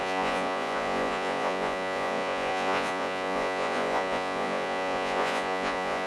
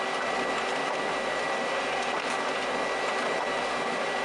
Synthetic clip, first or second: first